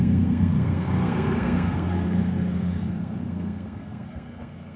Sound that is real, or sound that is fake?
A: fake